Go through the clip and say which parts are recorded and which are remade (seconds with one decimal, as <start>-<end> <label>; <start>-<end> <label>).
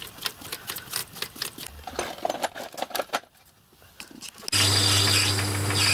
0.0-5.9 recorded